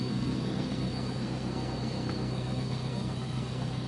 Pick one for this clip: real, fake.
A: fake